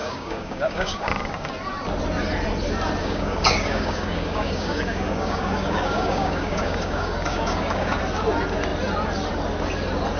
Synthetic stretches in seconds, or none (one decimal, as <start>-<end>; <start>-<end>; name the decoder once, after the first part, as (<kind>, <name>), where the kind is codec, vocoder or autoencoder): 0.0-1.5 (codec, DAC); 3.0-8.0